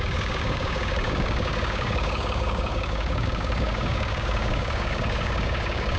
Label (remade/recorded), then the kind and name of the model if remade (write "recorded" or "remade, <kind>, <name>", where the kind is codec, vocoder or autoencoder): remade, codec, DAC